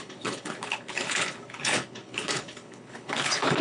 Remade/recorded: remade